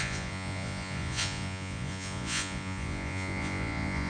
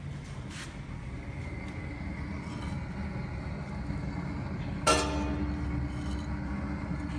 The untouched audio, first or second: second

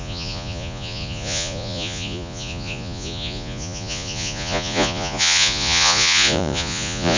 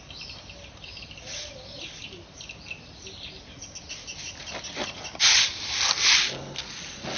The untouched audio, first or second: second